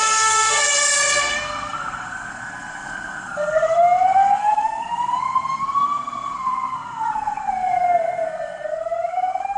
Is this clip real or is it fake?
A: fake